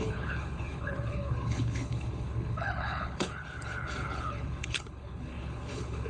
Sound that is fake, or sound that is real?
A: fake